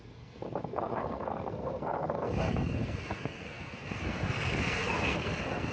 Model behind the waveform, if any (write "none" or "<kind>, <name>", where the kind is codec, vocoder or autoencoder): codec, SNAC